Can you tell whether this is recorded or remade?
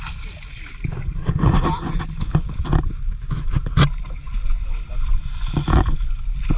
recorded